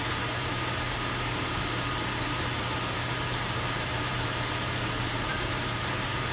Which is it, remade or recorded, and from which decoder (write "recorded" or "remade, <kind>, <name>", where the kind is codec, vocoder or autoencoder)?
remade, vocoder, BigVGAN v2